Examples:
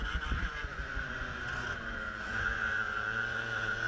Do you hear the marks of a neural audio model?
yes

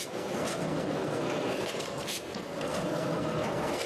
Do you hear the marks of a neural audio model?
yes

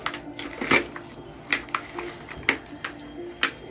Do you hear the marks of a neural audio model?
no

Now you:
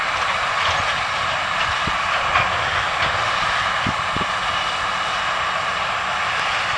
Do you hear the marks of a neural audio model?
no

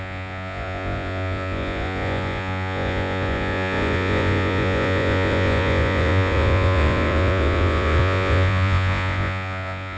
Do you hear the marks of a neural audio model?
yes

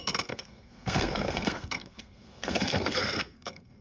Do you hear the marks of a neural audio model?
yes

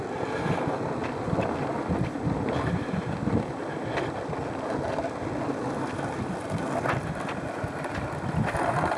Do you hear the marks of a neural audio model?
no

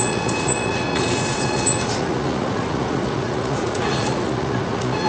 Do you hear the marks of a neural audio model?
yes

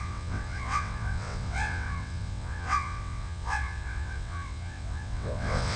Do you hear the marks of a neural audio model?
yes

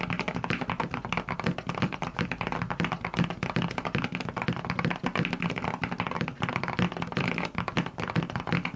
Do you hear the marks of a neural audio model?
no